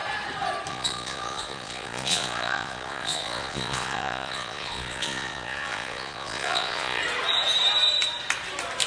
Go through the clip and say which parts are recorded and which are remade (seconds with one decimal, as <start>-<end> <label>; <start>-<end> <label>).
0.0-0.7 recorded; 0.7-7.0 remade; 7.0-8.9 recorded